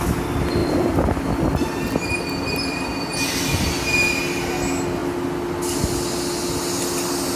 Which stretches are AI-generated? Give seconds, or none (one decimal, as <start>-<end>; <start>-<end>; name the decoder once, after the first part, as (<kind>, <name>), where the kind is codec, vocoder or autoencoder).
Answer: none

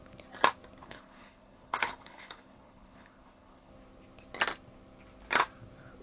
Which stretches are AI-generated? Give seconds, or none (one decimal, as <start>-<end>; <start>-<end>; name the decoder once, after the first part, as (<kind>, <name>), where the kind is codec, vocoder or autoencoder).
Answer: 0.8-3.7 (codec, HILCodec)

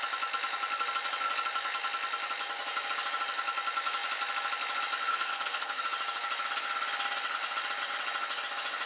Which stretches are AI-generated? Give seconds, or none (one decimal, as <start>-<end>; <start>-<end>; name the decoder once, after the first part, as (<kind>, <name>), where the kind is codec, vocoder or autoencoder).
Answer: 5.1-5.8 (codec, SNAC)

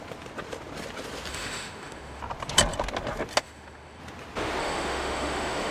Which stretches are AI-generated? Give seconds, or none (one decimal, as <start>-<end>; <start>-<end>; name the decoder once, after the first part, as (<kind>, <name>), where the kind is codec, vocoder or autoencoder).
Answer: 1.3-2.2 (autoencoder, DAC-VAE); 3.4-4.0; 4.6-5.7

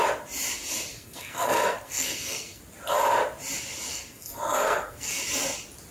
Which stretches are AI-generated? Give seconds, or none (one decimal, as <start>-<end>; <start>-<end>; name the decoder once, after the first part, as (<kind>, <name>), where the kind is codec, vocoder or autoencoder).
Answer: 0.9-2.6 (codec, SNAC); 3.9-5.2